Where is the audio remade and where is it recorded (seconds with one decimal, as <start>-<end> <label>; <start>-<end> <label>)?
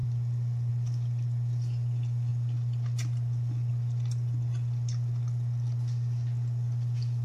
0.0-7.2 recorded